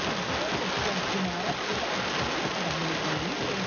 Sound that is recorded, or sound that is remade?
recorded